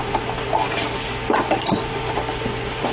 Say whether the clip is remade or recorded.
recorded